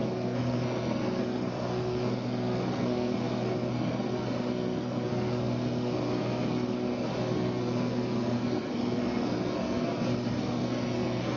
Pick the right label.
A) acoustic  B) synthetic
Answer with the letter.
B